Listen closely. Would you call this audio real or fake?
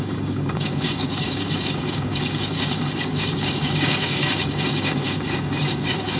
fake